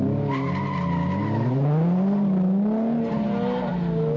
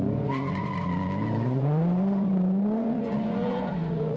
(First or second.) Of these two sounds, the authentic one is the first